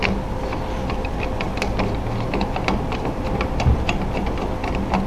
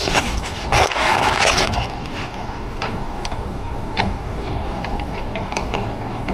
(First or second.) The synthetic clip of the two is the second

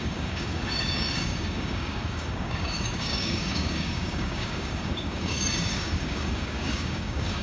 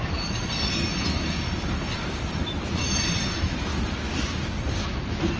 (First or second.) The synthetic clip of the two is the first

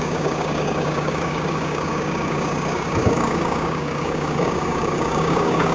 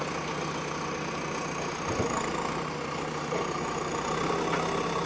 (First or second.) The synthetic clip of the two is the first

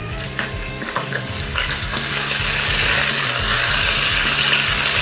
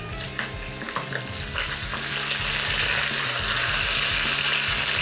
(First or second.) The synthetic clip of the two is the first